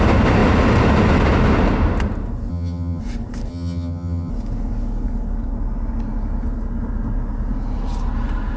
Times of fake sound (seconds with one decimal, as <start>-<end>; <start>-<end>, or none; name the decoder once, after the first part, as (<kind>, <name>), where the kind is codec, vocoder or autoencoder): 2.5-3.0 (vocoder, HiFi-GAN); 3.5-4.3